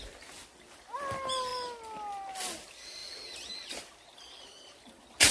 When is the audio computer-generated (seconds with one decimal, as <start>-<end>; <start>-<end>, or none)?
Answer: none